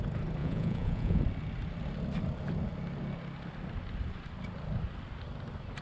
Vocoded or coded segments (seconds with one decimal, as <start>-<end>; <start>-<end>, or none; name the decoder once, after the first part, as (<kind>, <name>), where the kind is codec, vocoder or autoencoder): 0.4-1.2 (vocoder, Vocos)